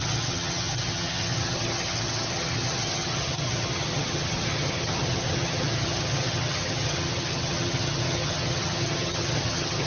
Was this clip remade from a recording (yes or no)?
yes